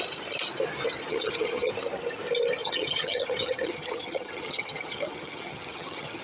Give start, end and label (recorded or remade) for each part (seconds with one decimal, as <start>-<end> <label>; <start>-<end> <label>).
0.0-1.1 recorded; 1.1-1.7 remade; 1.7-2.6 recorded; 2.6-6.2 remade

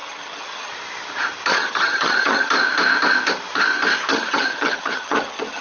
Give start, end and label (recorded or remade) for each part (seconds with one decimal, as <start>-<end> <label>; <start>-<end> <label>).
0.0-0.7 remade; 0.7-1.5 recorded; 1.5-2.5 remade; 2.5-4.1 recorded; 4.1-5.6 remade

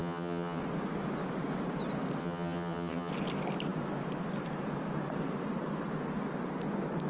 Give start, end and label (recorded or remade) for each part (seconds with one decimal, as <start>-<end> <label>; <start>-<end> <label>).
0.0-0.6 remade; 0.6-2.2 recorded; 2.2-3.1 remade; 3.1-7.1 recorded

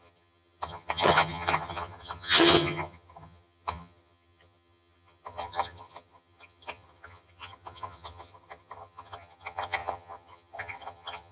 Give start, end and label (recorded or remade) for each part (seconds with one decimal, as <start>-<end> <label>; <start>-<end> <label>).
0.0-11.3 remade

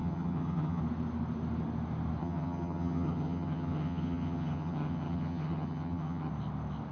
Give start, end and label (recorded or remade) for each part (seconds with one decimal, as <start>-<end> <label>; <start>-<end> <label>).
0.0-0.8 remade; 0.8-2.2 recorded; 2.2-6.3 remade; 6.3-6.9 recorded